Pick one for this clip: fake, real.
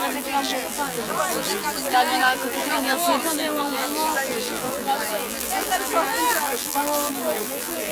fake